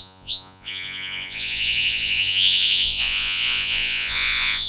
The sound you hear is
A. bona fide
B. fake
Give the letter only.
B